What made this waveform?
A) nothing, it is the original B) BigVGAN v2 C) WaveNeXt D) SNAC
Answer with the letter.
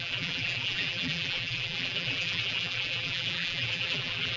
B